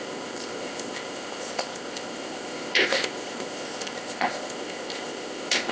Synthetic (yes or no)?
yes